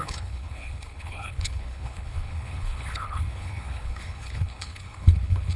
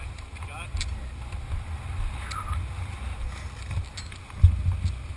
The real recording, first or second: second